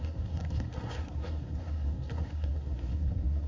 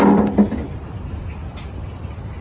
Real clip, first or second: second